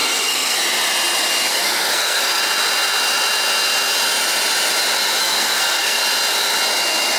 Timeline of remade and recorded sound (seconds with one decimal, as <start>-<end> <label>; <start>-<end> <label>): 0.0-0.6 remade; 0.6-1.5 recorded; 1.5-2.4 remade; 2.4-5.2 recorded; 5.2-6.0 remade; 6.0-7.2 recorded

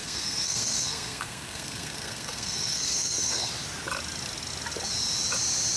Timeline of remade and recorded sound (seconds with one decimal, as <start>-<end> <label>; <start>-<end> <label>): 0.0-3.5 remade; 3.5-5.8 recorded